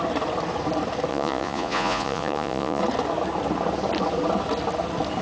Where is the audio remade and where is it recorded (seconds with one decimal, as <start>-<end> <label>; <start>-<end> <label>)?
0.0-1.1 recorded; 1.1-2.8 remade; 2.8-5.2 recorded